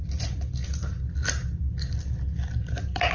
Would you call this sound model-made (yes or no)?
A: no